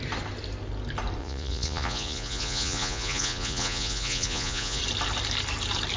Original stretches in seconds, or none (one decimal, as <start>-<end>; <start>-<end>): 0.0-1.2; 4.8-6.0